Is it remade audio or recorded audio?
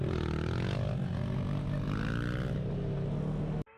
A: recorded